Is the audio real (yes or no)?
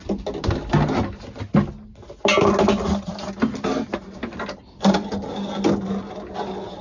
yes